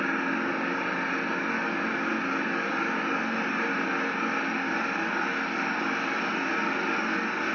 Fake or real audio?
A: real